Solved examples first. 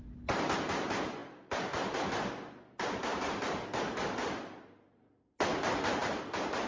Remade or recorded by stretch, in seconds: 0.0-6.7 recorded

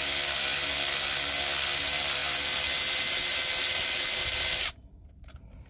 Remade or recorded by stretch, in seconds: 0.0-5.7 recorded

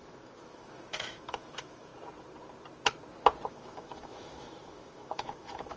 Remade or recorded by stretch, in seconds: 0.0-1.9 remade; 1.9-3.5 recorded; 3.5-5.8 remade

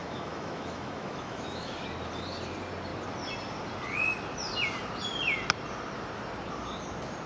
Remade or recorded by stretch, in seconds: 0.0-1.8 remade; 1.8-7.3 recorded

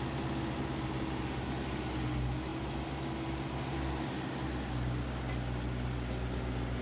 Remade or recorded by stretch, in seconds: 0.0-6.8 recorded

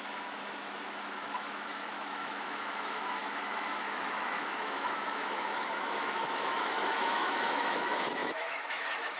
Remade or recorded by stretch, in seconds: 0.0-9.2 remade

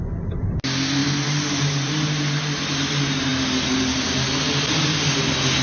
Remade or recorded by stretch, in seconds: 0.0-5.6 recorded

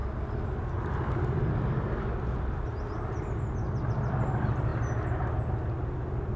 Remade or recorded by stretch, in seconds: 0.0-6.4 recorded